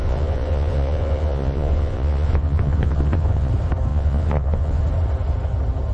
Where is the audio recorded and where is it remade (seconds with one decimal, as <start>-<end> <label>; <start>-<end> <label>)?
0.0-3.5 remade; 3.5-3.9 recorded; 3.9-4.8 remade; 4.8-5.9 recorded